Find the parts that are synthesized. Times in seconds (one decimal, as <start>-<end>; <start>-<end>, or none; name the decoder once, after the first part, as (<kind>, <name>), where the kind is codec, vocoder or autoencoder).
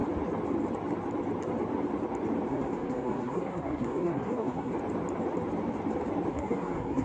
2.5-4.7 (codec, SNAC); 6.3-7.0